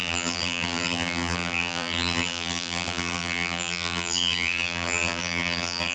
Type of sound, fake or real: fake